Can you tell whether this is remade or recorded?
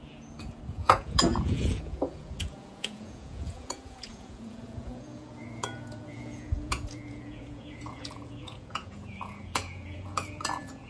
remade